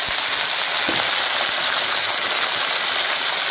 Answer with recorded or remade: recorded